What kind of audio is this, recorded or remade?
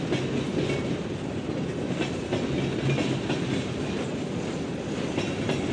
recorded